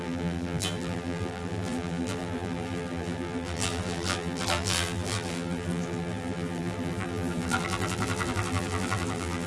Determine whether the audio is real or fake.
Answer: fake